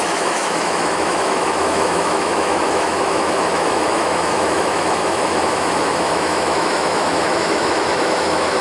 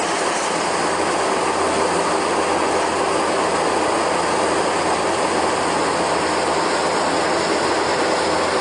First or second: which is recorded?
second